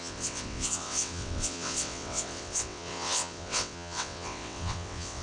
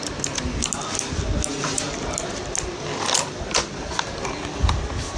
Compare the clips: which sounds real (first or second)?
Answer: second